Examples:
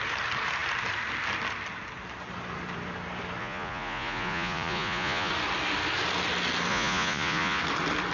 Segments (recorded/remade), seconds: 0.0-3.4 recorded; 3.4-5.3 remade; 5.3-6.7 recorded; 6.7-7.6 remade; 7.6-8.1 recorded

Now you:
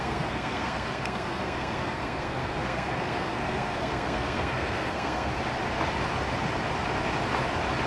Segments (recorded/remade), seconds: 0.0-5.3 remade; 5.3-7.9 recorded

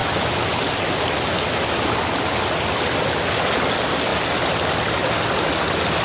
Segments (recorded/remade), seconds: 0.0-6.0 recorded